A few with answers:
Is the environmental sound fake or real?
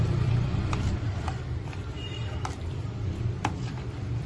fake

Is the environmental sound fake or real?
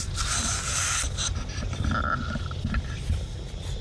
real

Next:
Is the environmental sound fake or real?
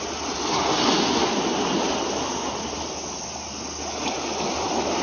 real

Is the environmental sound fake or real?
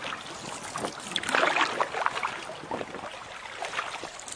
real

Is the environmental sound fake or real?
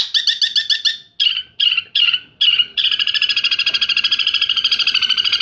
real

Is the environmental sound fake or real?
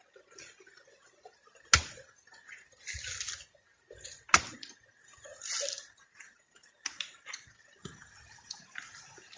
real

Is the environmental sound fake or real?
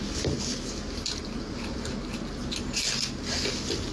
real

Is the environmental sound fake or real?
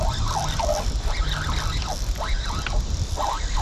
real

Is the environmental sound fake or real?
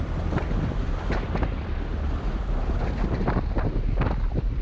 real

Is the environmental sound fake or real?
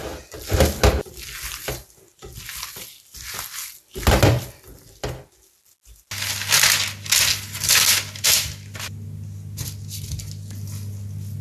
real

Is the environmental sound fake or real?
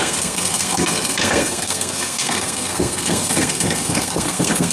fake